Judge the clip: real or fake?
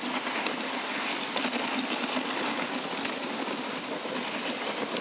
real